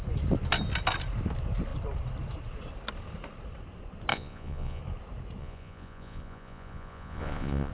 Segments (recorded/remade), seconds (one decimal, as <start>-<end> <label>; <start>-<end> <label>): 0.0-4.1 recorded; 4.1-4.8 remade; 4.8-5.4 recorded; 5.4-7.7 remade